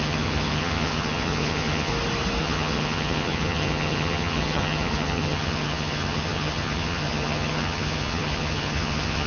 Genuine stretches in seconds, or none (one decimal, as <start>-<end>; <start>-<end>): 1.9-2.4